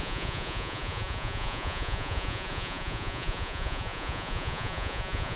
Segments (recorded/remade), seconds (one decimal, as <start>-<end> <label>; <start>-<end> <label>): 0.0-5.4 remade